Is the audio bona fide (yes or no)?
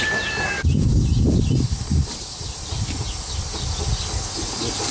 yes